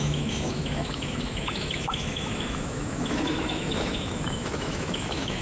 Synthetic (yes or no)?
yes